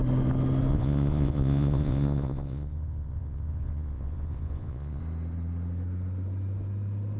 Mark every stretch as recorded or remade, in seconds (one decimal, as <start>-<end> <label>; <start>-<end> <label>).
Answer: 0.0-0.7 recorded; 0.7-5.0 remade; 5.0-7.2 recorded